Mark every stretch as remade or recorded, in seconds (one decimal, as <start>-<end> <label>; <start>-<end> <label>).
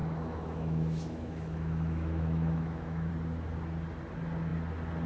0.0-3.1 remade; 3.1-5.1 recorded